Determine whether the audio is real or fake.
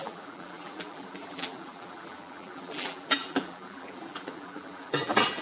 fake